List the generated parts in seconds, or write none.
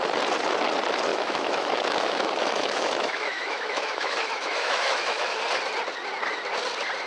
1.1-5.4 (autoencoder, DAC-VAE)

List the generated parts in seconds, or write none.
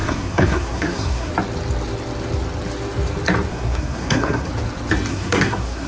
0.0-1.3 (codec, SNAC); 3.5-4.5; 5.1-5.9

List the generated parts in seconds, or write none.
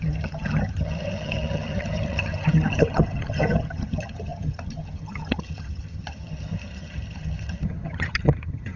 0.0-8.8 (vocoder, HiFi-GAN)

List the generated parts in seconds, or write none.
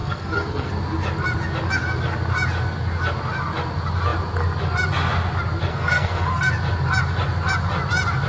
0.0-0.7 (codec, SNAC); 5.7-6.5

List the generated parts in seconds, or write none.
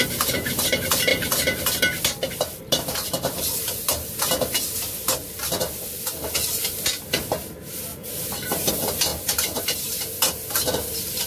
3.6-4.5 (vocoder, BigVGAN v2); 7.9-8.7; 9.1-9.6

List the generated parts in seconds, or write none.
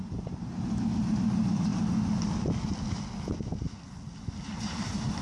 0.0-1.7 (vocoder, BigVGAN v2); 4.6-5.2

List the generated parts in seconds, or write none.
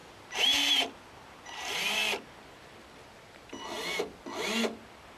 0.0-2.0 (vocoder, BigVGAN v2)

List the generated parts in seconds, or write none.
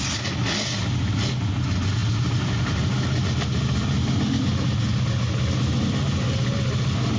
none